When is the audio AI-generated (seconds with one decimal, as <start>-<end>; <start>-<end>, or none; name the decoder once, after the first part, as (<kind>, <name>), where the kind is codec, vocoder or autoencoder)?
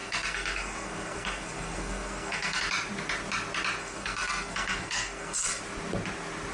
0.0-2.6 (codec, SNAC); 3.8-5.6